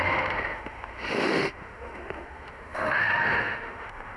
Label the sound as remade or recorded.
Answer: remade